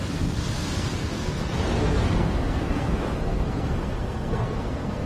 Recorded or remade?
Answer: remade